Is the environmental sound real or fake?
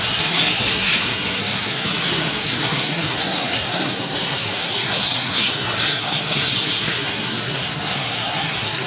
fake